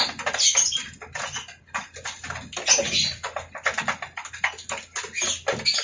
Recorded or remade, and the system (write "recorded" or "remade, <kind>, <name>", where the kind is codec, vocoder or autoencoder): recorded